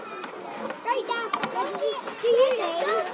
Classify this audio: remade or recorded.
recorded